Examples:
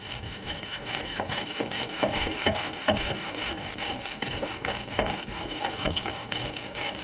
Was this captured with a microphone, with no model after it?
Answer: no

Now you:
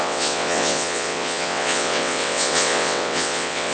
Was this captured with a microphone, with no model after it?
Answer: no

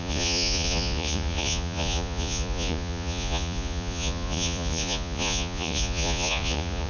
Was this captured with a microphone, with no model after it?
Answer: no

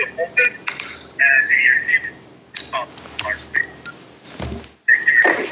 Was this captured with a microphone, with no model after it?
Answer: yes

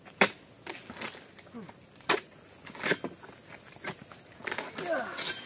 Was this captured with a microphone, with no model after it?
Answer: yes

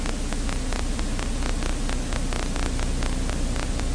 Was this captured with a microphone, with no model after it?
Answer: yes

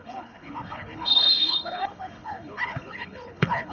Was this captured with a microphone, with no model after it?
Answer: no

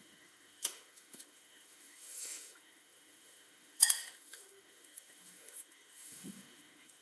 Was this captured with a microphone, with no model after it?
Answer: no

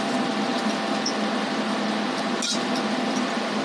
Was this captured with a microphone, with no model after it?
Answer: yes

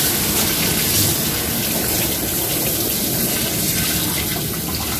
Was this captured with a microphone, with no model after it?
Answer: yes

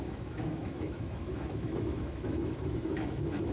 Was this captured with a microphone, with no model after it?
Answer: no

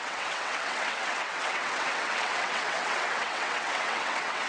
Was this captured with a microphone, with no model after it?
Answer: no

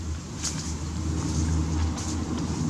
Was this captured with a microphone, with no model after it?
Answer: yes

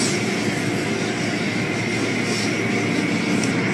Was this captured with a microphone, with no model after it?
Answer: yes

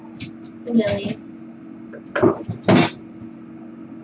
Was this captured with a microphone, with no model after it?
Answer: yes